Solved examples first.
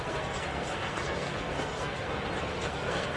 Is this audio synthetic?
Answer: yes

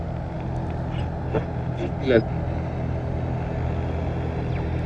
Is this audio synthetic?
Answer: no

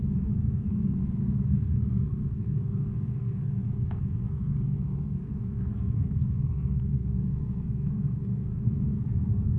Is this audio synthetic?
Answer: yes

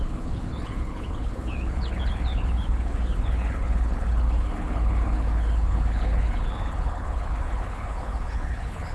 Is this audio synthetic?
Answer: yes